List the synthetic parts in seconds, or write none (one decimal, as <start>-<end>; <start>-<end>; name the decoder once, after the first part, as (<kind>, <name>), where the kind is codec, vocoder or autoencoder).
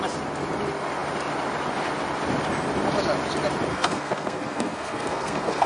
3.7-5.7 (codec, SNAC)